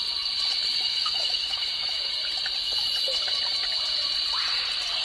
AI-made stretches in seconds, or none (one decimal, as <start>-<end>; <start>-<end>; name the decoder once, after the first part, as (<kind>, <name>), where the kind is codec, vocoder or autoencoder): 0.9-2.1 (autoencoder, DAC-VAE)